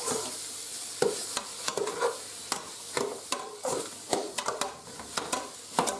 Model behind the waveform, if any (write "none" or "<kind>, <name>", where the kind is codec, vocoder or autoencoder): none